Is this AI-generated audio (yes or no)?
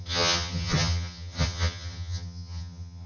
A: yes